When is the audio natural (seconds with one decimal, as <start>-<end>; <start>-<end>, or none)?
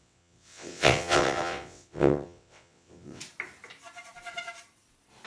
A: 3.2-5.3